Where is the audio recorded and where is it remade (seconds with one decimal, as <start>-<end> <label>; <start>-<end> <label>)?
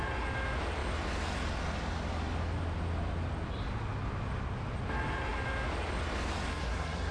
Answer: 0.0-6.5 recorded; 6.5-7.1 remade